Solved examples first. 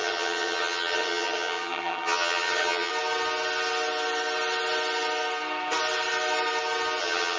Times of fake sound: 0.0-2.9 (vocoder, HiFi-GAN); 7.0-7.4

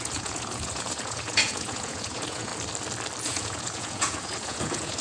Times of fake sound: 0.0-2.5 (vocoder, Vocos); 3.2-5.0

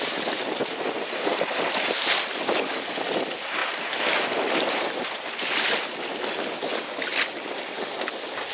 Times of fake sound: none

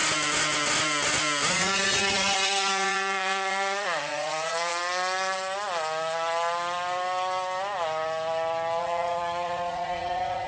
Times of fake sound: 1.5-4.7 (vocoder, Vocos); 8.8-10.5

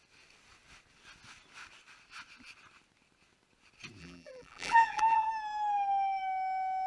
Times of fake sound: 4.0-5.3 (vocoder, BigVGAN v2)

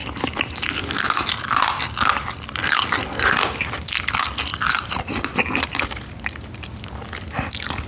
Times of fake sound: 0.0-0.8 (vocoder, BigVGAN v2); 4.5-7.5